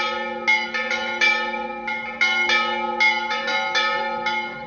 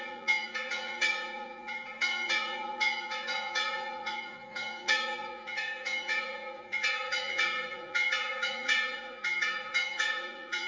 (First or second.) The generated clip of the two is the second